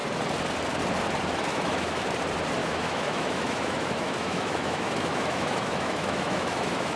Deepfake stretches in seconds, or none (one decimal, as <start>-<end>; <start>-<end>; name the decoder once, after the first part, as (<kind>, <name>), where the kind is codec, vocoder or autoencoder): 1.5-2.1 (autoencoder, DAC-VAE); 2.6-7.0